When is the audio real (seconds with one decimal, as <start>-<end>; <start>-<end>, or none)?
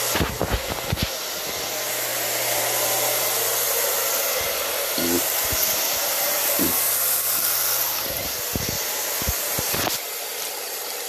0.0-11.1